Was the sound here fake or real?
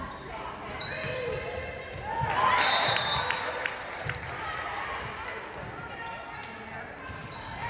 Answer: real